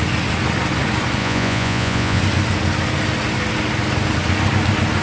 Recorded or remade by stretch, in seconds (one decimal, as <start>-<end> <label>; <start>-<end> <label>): 0.0-1.2 recorded; 1.2-2.2 remade; 2.2-5.0 recorded